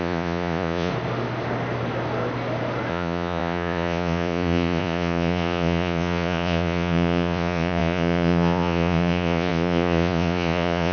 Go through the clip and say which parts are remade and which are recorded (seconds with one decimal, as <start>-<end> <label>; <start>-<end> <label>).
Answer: 0.0-0.9 remade; 0.9-2.9 recorded; 2.9-10.9 remade